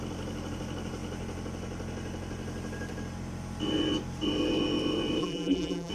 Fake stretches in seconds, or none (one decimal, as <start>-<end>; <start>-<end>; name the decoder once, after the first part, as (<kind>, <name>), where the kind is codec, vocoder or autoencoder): 5.2-5.9 (vocoder, BigVGAN v2)